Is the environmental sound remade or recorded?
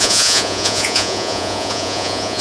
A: remade